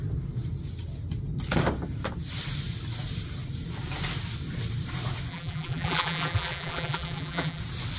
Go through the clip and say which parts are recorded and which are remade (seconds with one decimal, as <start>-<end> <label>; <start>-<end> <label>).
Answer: 0.0-5.3 recorded; 5.3-7.6 remade; 7.6-8.0 recorded